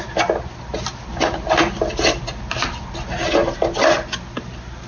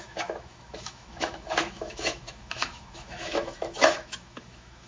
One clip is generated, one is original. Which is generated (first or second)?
second